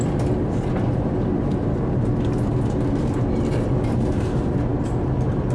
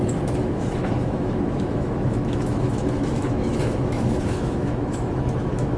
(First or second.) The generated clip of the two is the second